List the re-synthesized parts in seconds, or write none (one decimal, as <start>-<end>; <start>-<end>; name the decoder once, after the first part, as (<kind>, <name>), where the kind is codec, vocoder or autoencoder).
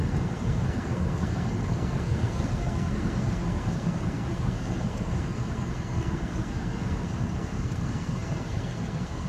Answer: 0.0-9.3 (codec, SNAC)